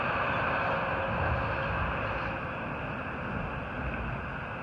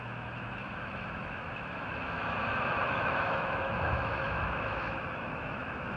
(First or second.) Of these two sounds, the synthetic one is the second